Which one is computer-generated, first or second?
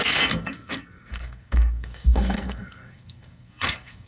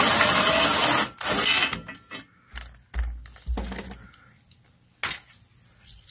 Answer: first